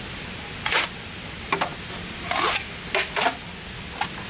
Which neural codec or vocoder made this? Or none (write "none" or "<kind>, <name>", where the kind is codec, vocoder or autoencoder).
none